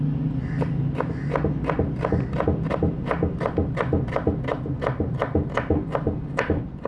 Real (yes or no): yes